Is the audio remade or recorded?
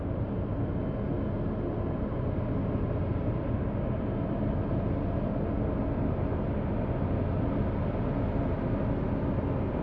recorded